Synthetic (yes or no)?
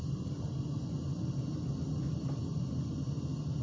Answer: no